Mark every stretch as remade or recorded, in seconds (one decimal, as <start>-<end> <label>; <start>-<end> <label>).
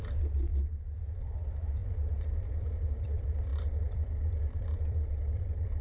0.0-0.5 remade; 0.5-1.0 recorded; 1.0-5.8 remade